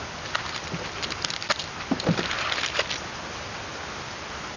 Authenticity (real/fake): fake